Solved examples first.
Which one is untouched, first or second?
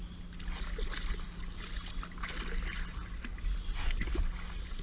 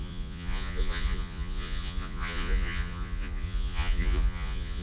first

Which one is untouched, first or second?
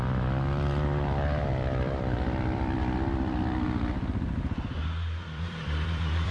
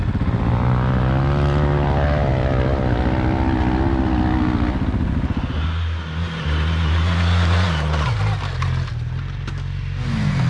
second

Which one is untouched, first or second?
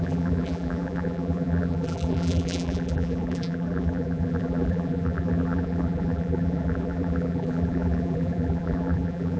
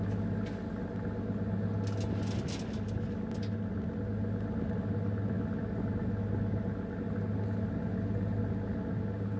second